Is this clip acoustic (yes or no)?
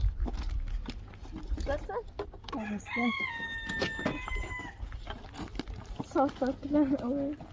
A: yes